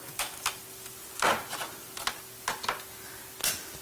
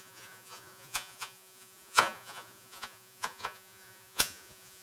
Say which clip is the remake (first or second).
second